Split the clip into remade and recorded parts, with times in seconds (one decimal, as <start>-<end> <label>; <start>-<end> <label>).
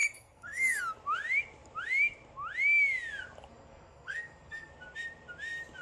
0.0-0.8 remade; 0.8-3.5 recorded; 3.5-4.7 remade; 4.7-5.8 recorded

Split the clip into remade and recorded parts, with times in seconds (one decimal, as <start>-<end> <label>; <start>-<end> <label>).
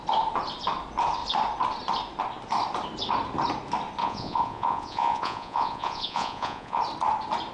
0.0-4.0 recorded; 4.0-6.8 remade; 6.8-7.5 recorded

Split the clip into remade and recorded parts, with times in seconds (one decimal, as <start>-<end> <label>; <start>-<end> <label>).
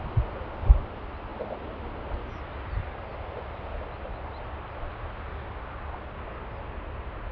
0.0-7.3 recorded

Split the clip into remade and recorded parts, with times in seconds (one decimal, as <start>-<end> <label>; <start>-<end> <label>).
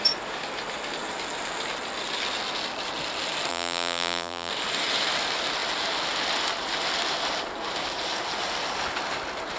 0.0-3.5 recorded; 3.5-4.5 remade; 4.5-9.6 recorded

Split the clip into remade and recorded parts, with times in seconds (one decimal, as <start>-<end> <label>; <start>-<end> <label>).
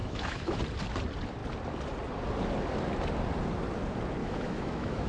0.0-0.6 remade; 0.6-4.2 recorded; 4.2-5.1 remade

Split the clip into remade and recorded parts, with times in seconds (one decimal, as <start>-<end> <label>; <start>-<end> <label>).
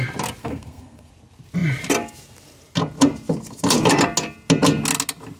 0.0-0.4 recorded; 0.4-1.1 remade; 1.1-5.4 recorded